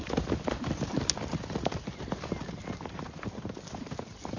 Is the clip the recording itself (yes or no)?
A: yes